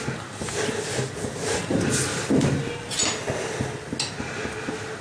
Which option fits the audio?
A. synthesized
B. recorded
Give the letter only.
B